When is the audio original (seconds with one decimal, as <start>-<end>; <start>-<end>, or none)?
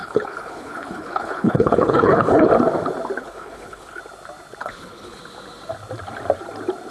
2.5-3.2; 4.0-4.6; 5.2-6.9